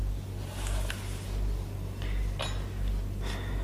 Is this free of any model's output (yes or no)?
yes